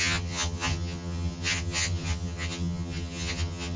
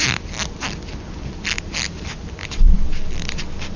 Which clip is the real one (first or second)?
second